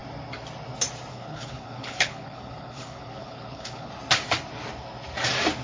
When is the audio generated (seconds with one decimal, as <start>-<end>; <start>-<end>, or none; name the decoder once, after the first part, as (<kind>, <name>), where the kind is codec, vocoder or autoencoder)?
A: 1.1-3.9 (codec, HILCodec)